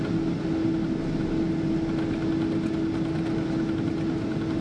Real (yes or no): yes